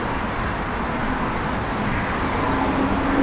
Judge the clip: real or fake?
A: real